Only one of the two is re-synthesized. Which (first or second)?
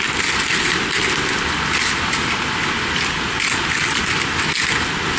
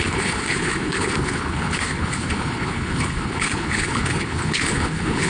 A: second